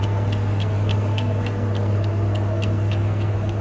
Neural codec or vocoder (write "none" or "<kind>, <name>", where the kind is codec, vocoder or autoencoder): codec, SNAC